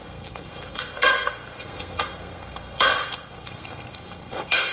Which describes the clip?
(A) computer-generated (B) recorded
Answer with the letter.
A